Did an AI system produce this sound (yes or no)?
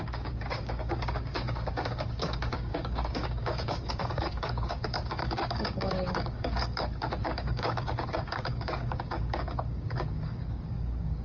yes